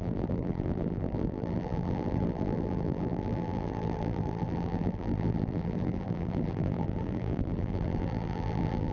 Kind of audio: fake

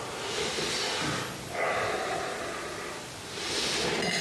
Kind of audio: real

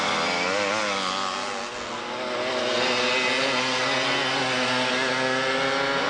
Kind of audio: real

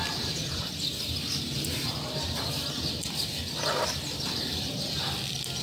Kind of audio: real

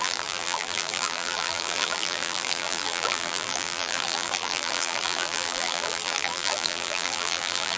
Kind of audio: fake